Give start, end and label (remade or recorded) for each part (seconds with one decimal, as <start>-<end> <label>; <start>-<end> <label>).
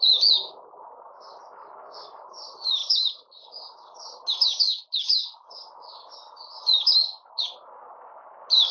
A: 0.0-8.7 recorded